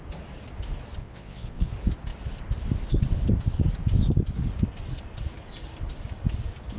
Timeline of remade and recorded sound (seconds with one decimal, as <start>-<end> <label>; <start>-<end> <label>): 0.0-1.0 recorded; 1.0-1.7 remade; 1.7-6.8 recorded